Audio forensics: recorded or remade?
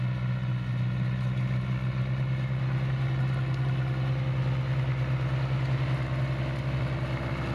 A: recorded